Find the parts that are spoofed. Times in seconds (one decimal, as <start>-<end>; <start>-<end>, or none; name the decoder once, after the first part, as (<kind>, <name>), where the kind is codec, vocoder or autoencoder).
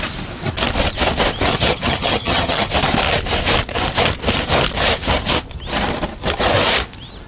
1.5-2.7 (vocoder, HiFi-GAN)